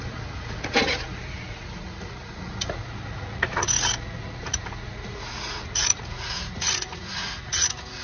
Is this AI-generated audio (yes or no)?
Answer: yes